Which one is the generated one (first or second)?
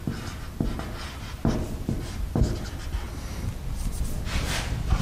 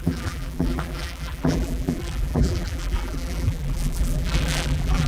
second